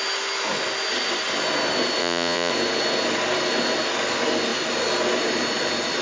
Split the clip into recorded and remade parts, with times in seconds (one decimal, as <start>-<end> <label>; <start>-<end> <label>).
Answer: 0.0-2.0 recorded; 2.0-2.5 remade; 2.5-6.0 recorded